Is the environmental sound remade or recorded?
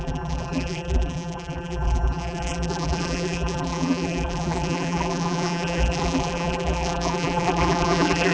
remade